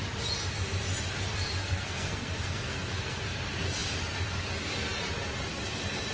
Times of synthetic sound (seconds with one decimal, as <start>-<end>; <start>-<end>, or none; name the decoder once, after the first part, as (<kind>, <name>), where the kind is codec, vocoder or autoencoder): 1.6-3.2 (codec, SNAC)